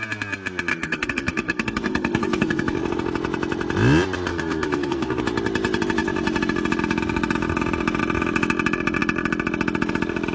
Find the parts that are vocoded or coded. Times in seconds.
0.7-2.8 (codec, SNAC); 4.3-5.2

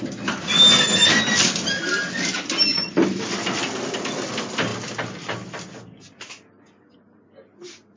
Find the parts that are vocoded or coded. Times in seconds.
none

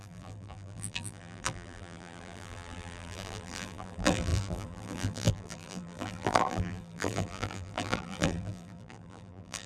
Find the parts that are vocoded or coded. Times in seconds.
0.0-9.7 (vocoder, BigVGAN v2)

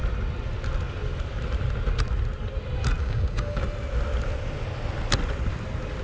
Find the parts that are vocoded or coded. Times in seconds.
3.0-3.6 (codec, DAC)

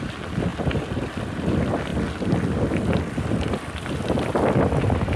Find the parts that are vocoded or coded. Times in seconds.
none